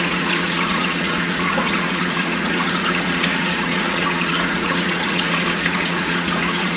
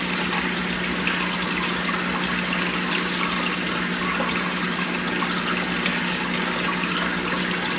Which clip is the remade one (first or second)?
first